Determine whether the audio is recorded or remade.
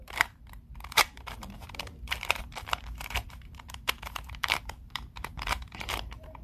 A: remade